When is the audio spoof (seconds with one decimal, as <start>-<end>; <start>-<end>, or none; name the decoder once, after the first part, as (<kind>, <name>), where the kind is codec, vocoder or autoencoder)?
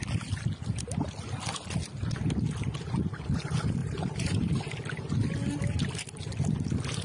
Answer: 3.8-4.6 (vocoder, BigVGAN v2)